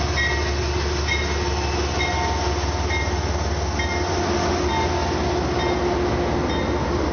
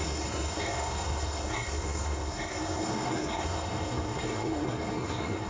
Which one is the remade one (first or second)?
second